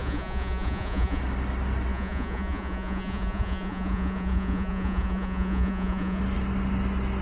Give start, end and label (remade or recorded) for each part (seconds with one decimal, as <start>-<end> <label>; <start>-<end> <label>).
0.0-1.2 remade; 1.2-1.9 recorded; 1.9-6.2 remade; 6.2-7.2 recorded